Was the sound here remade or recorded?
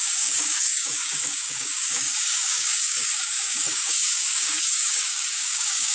remade